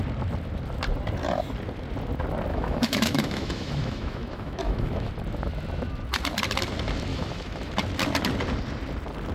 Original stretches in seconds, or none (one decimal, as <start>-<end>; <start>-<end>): 0.0-2.5; 5.1-7.1; 7.7-9.3